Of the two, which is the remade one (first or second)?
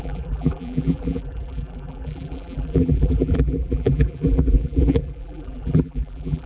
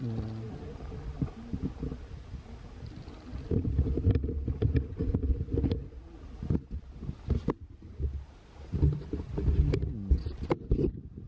first